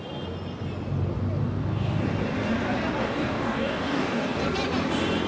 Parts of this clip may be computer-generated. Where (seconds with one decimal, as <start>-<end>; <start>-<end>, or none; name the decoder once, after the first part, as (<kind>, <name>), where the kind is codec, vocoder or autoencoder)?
1.4-2.0 (codec, DAC); 3.0-4.4